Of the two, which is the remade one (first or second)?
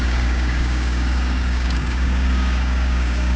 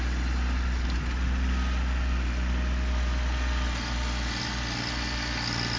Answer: first